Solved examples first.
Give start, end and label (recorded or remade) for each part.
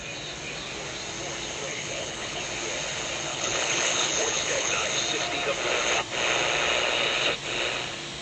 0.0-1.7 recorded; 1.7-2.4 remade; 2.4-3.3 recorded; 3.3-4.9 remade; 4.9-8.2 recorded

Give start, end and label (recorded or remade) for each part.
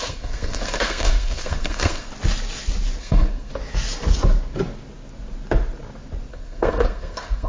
0.0-2.1 remade; 2.1-3.0 recorded; 3.0-3.5 remade; 3.5-6.3 recorded; 6.3-7.5 remade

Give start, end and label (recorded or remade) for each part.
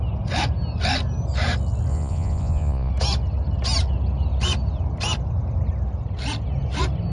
0.0-1.9 recorded; 1.9-2.9 remade; 2.9-7.1 recorded